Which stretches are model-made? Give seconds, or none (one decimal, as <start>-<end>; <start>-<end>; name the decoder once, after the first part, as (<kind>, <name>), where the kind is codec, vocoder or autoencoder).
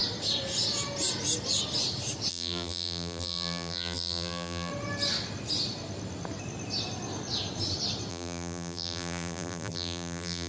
2.3-4.7 (vocoder, BigVGAN v2); 8.1-10.5